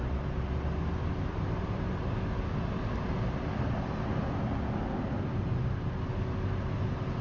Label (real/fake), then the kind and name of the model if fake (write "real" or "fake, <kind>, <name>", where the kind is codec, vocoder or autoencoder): real